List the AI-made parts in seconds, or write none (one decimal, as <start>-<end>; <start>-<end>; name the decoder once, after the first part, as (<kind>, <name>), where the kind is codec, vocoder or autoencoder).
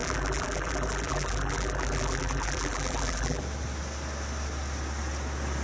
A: 0.0-3.4 (vocoder, BigVGAN v2)